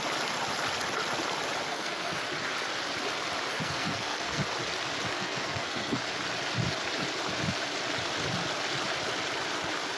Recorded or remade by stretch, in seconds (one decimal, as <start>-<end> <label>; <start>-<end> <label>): 0.0-1.7 recorded; 1.7-2.2 remade; 2.2-3.5 recorded; 3.5-4.4 remade; 4.4-5.1 recorded; 5.1-6.0 remade; 6.0-10.0 recorded